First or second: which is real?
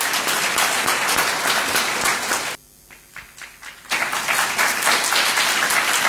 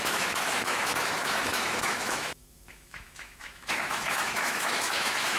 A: first